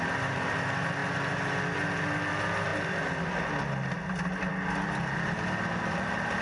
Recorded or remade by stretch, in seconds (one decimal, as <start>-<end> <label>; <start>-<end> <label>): 0.0-6.4 recorded